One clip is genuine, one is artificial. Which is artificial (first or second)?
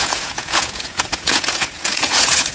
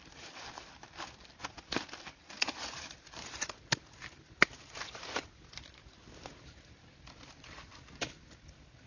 first